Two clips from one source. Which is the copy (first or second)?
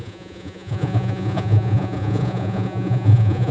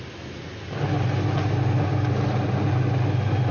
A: first